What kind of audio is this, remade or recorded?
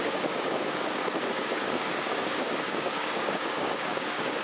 remade